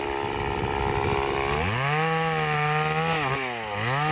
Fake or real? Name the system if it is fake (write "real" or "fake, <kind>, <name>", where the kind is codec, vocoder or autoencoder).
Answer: real